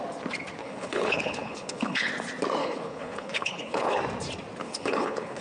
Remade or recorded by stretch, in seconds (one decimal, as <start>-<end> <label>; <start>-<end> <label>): 0.0-0.6 recorded; 0.6-2.1 remade; 2.1-2.6 recorded; 2.6-4.0 remade; 4.0-4.6 recorded; 4.6-5.4 remade